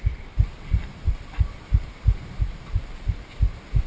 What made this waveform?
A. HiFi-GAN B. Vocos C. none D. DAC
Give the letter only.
C